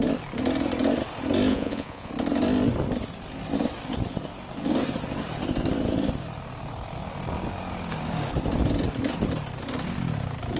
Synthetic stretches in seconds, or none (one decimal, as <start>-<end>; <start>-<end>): 1.5-2.1